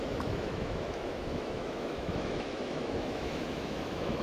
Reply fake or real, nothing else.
fake